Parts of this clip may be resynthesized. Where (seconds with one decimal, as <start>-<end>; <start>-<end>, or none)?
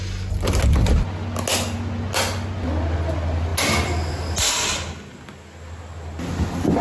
none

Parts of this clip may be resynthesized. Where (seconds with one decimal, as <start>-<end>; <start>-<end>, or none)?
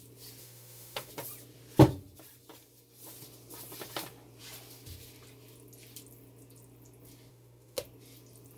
0.4-1.1; 7.3-7.8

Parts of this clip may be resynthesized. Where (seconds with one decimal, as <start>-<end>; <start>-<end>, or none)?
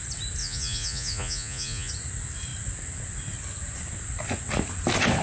0.4-1.9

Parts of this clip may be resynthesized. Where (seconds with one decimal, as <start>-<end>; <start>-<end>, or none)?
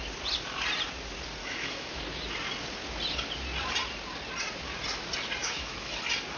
1.4-2.0; 5.4-6.0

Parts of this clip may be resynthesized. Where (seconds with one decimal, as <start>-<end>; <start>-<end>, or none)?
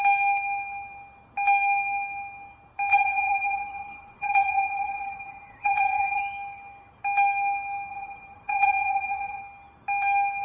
2.9-6.2; 7.9-9.4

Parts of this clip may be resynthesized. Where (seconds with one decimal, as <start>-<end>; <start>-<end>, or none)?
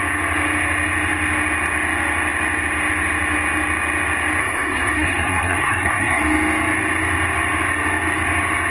4.4-6.2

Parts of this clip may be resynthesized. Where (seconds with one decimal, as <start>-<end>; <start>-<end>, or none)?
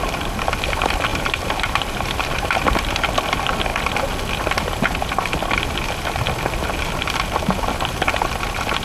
1.1-3.0